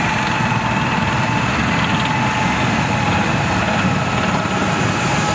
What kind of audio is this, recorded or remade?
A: recorded